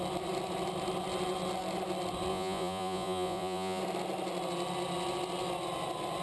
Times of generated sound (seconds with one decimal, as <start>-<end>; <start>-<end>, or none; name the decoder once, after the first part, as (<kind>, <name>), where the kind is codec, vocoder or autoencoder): 2.3-3.8 (vocoder, Vocos)